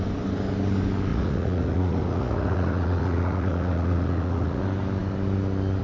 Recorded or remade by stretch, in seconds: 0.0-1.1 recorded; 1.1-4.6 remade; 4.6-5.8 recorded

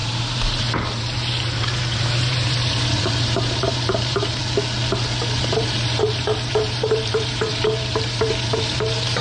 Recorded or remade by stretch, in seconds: 0.0-4.4 remade; 4.4-5.4 recorded; 5.4-9.2 remade

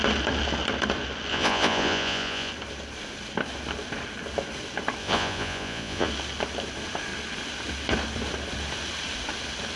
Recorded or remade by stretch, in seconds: 0.0-1.3 recorded; 1.3-2.5 remade; 2.5-5.0 recorded; 5.0-6.1 remade; 6.1-9.8 recorded

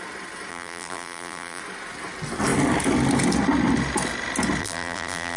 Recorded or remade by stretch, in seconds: 0.0-0.5 recorded; 0.5-1.6 remade; 1.6-4.6 recorded; 4.6-5.4 remade